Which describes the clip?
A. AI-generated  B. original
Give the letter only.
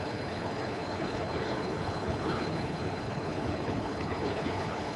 A